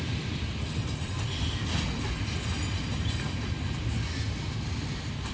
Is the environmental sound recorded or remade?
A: recorded